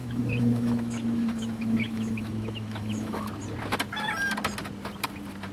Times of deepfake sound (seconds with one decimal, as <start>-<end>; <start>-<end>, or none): 0.0-3.3

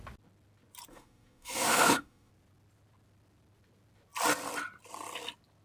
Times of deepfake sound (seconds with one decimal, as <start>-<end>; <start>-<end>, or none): 0.9-2.3